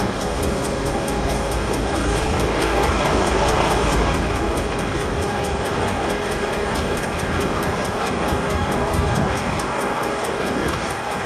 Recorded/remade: remade